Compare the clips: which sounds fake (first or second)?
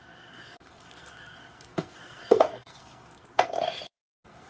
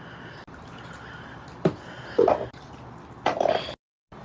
first